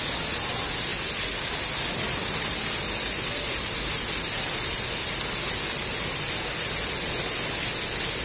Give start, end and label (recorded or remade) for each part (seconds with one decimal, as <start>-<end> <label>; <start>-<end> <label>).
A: 0.0-8.2 recorded

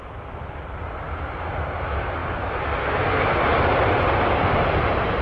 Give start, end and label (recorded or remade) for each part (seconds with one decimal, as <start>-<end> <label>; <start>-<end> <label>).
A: 0.0-5.2 recorded